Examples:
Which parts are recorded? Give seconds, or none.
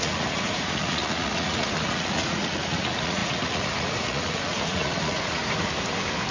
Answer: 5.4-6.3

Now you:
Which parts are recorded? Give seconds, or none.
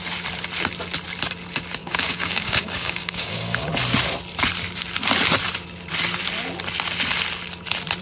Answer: 0.0-1.8; 3.7-8.0